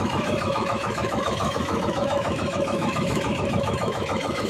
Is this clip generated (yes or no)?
yes